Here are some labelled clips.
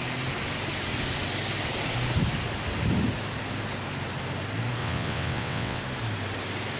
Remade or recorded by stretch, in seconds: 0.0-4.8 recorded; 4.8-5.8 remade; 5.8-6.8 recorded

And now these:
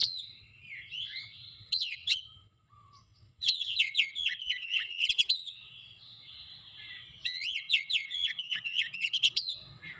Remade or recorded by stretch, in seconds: 0.0-10.0 remade

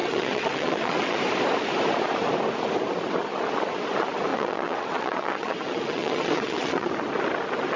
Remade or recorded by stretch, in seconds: 0.0-1.2 remade; 1.2-4.3 recorded; 4.3-6.9 remade; 6.9-7.8 recorded

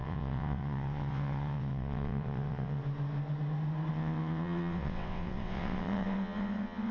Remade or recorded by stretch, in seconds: 0.0-2.8 remade; 2.8-3.9 recorded; 3.9-6.9 remade

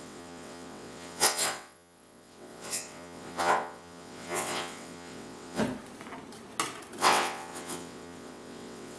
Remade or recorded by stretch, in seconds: 0.0-5.6 remade; 5.6-7.0 recorded; 7.0-9.0 remade

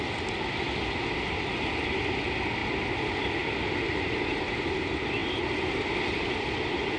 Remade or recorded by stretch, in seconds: 0.0-7.0 recorded

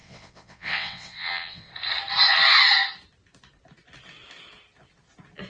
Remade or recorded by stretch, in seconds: 0.0-1.7 remade; 1.7-5.5 recorded

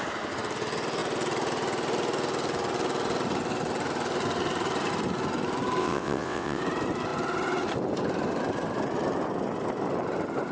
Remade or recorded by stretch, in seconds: 0.0-5.8 recorded; 5.8-6.6 remade; 6.6-10.5 recorded